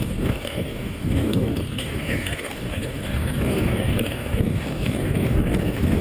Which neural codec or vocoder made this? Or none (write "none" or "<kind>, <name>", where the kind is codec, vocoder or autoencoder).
codec, DAC